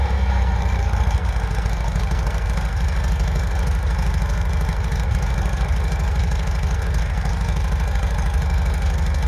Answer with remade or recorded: remade